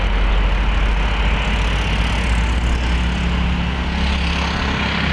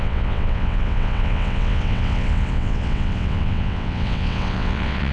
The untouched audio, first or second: first